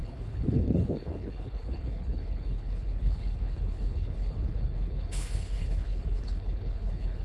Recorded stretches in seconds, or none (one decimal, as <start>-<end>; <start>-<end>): none